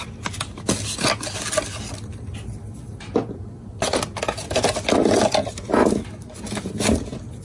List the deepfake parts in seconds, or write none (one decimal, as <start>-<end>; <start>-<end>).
none